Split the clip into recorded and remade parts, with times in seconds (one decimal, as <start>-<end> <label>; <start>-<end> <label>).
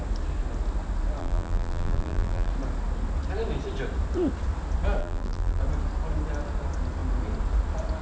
0.0-1.2 recorded; 1.2-2.5 remade; 2.5-5.0 recorded; 5.0-5.6 remade; 5.6-8.0 recorded